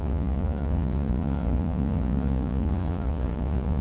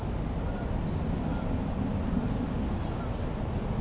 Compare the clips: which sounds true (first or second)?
second